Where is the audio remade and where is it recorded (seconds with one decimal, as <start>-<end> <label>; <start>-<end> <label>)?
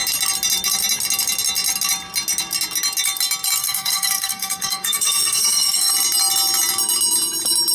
0.0-3.6 recorded; 3.6-5.9 remade; 5.9-7.7 recorded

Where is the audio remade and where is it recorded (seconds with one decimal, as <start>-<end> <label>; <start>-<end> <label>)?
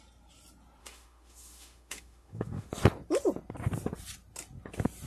0.0-0.8 recorded; 0.8-2.7 remade; 2.7-5.1 recorded